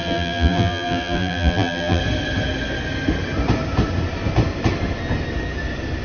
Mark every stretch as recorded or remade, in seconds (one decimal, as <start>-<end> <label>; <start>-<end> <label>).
0.0-2.0 remade; 2.0-6.0 recorded